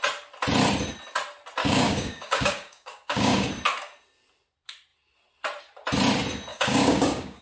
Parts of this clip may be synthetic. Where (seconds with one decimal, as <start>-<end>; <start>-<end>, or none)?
1.6-3.5; 6.5-7.4